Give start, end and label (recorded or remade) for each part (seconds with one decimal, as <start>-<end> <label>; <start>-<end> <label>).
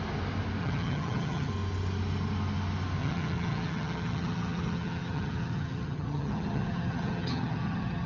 0.0-0.6 recorded; 0.6-1.5 remade; 1.5-3.0 recorded; 3.0-8.1 remade